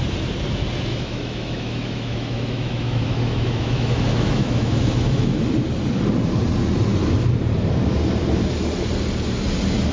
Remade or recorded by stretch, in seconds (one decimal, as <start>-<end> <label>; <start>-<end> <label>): 0.0-0.9 recorded; 0.9-5.4 remade; 5.4-9.9 recorded